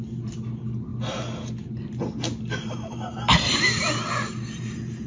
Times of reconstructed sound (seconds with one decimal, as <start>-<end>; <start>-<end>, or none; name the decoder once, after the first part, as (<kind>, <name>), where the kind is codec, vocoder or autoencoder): none